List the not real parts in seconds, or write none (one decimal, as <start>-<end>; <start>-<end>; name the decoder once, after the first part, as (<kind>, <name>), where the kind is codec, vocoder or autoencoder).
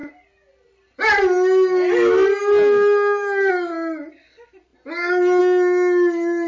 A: none